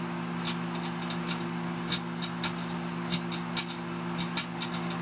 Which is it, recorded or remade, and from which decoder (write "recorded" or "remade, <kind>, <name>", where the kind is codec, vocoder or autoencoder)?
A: recorded